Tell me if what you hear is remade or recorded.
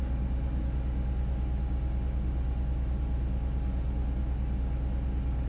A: recorded